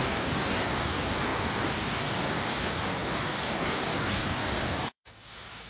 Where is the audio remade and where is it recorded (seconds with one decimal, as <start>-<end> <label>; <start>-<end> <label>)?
0.0-5.7 remade

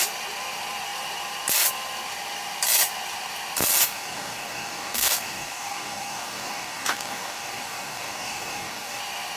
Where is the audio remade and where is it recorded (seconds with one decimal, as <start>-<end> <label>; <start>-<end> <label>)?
0.0-3.8 recorded; 3.8-9.0 remade; 9.0-9.4 recorded

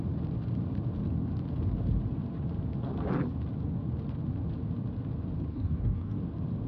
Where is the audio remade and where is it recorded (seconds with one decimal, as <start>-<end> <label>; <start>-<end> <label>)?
0.0-5.5 recorded; 5.5-6.2 remade; 6.2-6.7 recorded

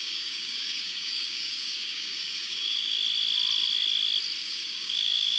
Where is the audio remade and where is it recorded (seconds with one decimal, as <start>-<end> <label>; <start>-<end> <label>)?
0.0-3.0 remade; 3.0-4.4 recorded; 4.4-5.4 remade

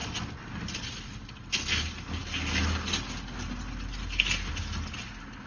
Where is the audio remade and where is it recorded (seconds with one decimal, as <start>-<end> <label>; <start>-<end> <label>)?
0.0-5.5 recorded

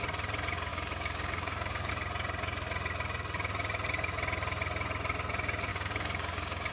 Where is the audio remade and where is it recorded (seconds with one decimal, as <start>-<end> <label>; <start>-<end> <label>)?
0.0-0.7 recorded; 0.7-1.9 remade; 1.9-5.7 recorded; 5.7-6.7 remade

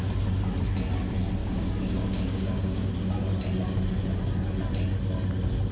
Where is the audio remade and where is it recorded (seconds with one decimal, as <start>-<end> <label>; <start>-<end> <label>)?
0.0-1.4 recorded; 1.4-2.9 remade; 2.9-5.7 recorded

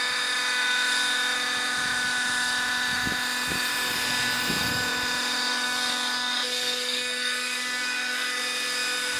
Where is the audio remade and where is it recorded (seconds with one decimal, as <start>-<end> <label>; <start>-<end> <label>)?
0.0-5.5 recorded; 5.5-8.4 remade; 8.4-9.2 recorded